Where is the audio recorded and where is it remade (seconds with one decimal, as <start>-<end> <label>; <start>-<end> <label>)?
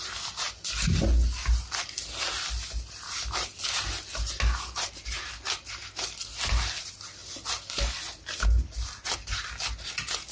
0.0-10.3 recorded